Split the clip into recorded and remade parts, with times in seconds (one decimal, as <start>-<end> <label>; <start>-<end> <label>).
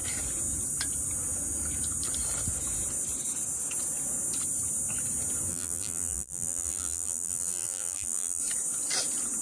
0.0-5.5 recorded; 5.5-8.4 remade; 8.4-9.4 recorded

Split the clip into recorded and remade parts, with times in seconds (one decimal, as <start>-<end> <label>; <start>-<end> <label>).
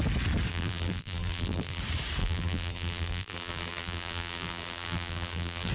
0.0-0.5 recorded; 0.5-1.8 remade; 1.8-2.2 recorded; 2.2-5.7 remade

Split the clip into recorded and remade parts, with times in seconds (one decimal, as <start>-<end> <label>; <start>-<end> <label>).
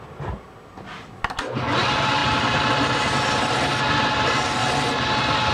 0.0-5.5 recorded